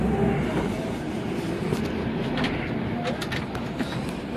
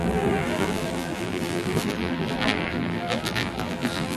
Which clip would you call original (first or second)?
first